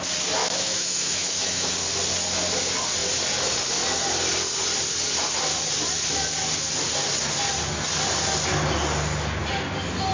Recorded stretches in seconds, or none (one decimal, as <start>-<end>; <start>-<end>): 0.0-0.4; 1.7-10.1